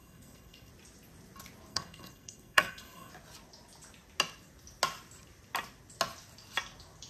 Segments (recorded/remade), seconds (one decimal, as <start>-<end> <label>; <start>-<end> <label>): 0.0-0.7 remade; 0.7-1.7 recorded; 1.7-3.1 remade; 3.1-7.1 recorded